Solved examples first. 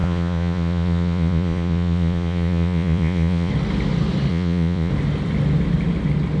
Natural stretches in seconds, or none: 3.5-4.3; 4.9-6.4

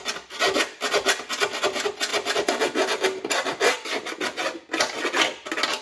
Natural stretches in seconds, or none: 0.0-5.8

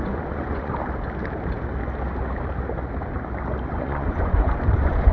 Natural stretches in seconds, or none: 0.7-3.7

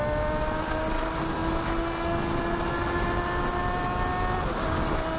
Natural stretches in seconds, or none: 0.0-5.2